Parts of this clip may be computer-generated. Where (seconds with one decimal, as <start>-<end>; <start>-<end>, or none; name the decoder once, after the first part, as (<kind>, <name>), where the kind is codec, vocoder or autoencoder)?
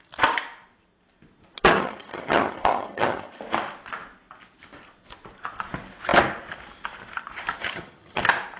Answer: 1.6-3.4 (vocoder, HiFi-GAN); 7.6-8.2